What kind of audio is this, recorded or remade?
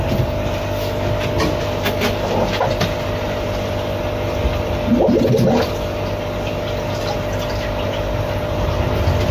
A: recorded